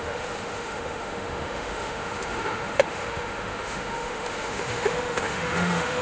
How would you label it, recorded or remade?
remade